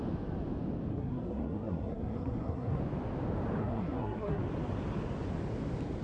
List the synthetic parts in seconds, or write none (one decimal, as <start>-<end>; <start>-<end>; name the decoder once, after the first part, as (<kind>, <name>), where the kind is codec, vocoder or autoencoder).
0.9-2.8 (codec, SNAC); 3.6-4.4